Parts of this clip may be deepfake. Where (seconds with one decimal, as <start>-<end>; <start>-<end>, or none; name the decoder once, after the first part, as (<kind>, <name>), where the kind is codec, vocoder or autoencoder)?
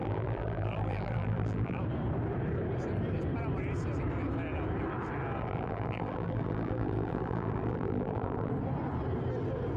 0.0-1.8 (vocoder, BigVGAN v2); 5.4-8.5